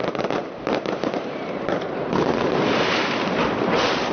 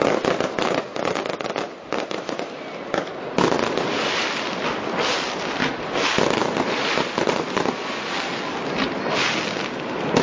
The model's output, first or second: first